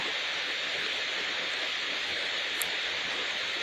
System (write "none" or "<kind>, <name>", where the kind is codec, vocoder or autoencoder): none